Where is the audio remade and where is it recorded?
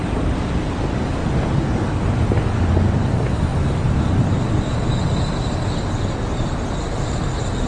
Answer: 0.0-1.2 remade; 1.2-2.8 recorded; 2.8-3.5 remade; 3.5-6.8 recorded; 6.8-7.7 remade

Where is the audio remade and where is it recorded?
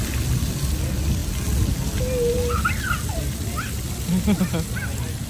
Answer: 0.0-5.3 recorded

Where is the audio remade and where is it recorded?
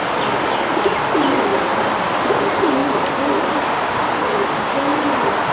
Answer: 0.0-2.8 recorded; 2.8-3.6 remade; 3.6-4.9 recorded; 4.9-5.5 remade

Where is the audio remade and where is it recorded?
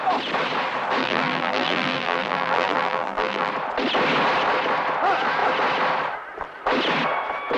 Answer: 0.0-1.0 recorded; 1.0-3.5 remade; 3.5-7.6 recorded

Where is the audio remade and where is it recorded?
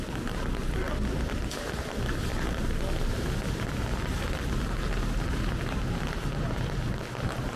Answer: 0.0-7.6 recorded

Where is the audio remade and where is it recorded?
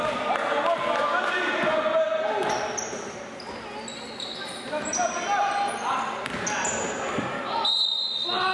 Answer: 0.0-8.5 recorded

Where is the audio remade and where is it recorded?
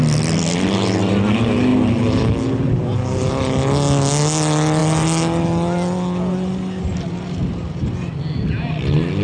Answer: 0.0-9.2 recorded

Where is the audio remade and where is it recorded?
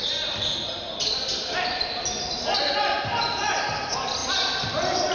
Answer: 0.0-5.1 recorded